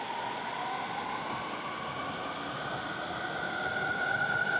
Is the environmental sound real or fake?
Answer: real